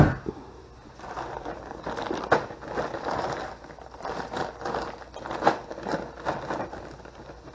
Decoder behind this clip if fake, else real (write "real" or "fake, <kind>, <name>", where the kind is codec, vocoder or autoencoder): real